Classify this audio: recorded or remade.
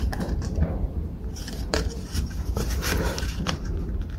remade